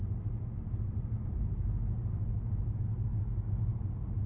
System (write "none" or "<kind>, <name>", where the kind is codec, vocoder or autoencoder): none